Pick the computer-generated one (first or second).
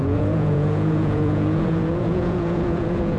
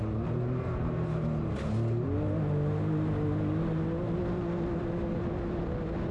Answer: first